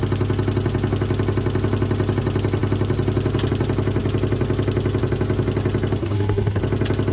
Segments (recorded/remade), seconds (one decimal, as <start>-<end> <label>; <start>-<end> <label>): 0.0-6.0 recorded; 6.0-6.6 remade; 6.6-7.1 recorded